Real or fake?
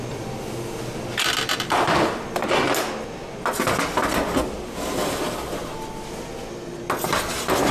real